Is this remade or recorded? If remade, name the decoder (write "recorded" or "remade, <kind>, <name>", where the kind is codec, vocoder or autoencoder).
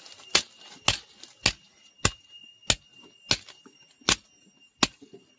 recorded